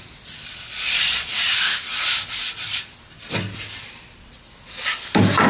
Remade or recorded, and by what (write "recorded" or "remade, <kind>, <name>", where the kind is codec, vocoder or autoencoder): recorded